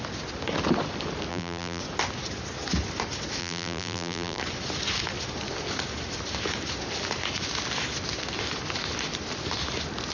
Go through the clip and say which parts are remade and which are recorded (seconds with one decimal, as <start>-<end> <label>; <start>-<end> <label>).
0.0-1.3 recorded; 1.3-1.8 remade; 1.8-3.4 recorded; 3.4-4.4 remade; 4.4-10.1 recorded